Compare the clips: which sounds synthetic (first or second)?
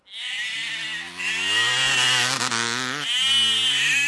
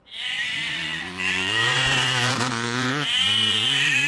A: second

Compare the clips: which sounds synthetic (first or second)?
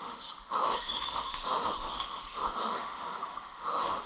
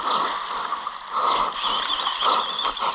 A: first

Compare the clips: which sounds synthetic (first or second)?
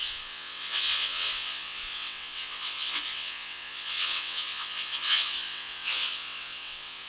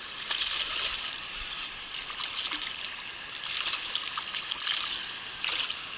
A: first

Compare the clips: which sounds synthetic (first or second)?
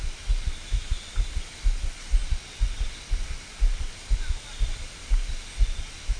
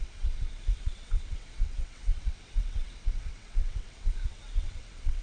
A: second